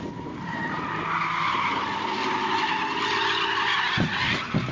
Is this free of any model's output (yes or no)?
yes